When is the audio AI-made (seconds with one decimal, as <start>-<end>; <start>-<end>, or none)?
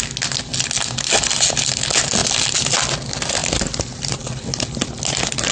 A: none